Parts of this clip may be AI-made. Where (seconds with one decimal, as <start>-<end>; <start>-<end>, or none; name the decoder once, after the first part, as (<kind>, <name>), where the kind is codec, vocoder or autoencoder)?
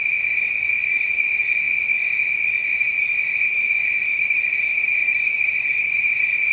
0.8-1.4 (vocoder, BigVGAN v2); 2.6-6.5